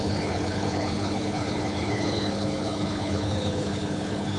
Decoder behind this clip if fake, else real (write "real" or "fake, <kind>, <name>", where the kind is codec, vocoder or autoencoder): fake, codec, HILCodec